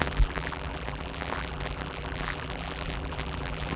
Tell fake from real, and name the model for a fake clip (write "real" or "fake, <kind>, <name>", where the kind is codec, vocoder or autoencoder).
fake, vocoder, BigVGAN v2